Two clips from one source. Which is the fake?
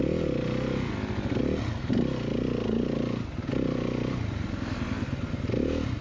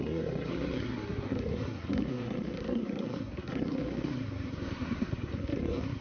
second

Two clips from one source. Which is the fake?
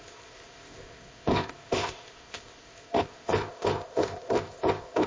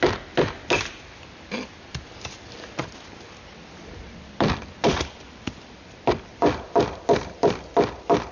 first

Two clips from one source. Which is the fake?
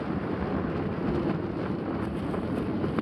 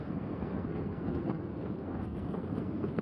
second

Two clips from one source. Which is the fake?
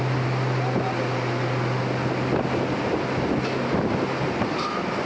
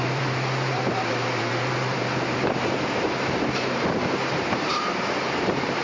second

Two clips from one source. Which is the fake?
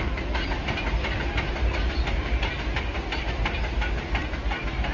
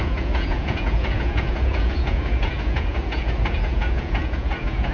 second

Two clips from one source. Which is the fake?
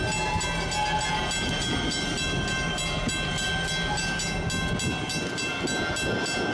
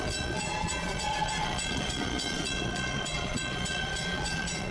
second